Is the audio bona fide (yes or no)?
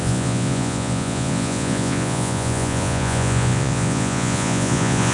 no